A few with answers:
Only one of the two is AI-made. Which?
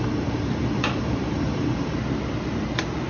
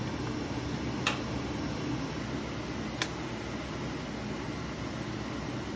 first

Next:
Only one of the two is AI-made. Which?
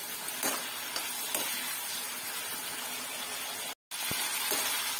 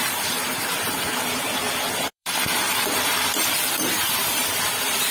second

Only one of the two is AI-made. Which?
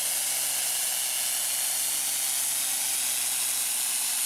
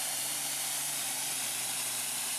second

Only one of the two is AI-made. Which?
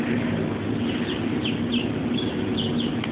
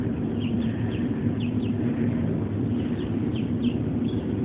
second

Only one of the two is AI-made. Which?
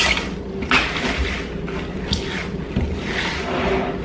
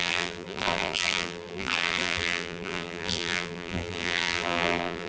second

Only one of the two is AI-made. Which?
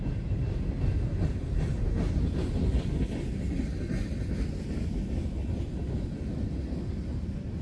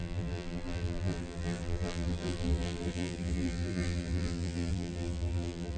second